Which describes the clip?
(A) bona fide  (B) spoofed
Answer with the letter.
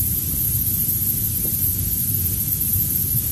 A